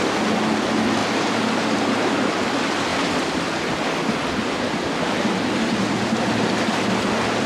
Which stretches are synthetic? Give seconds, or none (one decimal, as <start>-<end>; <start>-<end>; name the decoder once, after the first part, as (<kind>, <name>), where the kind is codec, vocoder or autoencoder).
none

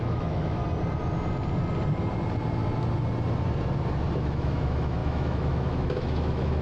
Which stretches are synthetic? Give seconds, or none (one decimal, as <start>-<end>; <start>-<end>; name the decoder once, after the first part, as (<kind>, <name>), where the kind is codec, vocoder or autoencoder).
0.0-0.6 (autoencoder, DAC-VAE); 4.2-6.6

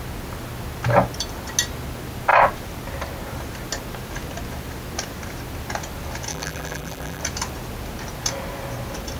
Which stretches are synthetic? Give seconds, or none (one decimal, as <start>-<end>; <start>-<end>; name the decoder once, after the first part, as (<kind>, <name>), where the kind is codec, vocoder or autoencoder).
6.3-7.2 (vocoder, BigVGAN v2)

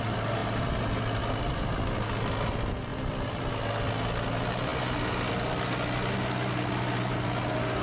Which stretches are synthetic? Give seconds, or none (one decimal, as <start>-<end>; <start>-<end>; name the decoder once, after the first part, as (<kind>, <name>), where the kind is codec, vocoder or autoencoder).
none

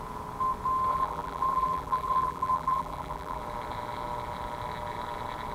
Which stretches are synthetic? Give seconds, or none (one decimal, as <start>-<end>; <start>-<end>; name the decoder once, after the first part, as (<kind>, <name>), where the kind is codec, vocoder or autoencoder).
0.9-3.4 (vocoder, BigVGAN v2)

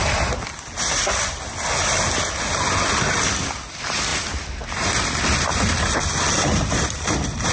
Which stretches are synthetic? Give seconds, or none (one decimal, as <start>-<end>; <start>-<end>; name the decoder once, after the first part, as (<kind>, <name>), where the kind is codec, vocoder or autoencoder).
4.1-7.5 (vocoder, BigVGAN v2)